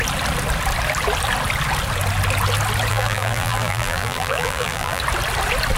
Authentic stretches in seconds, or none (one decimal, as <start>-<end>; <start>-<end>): 0.0-2.9; 5.0-5.8